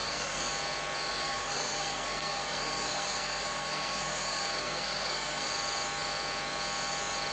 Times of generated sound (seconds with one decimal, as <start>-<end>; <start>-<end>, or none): 0.0-0.5; 1.1-5.5